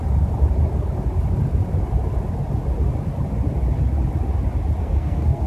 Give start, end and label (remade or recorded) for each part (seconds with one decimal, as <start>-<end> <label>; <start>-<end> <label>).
0.0-4.8 recorded; 4.8-5.5 remade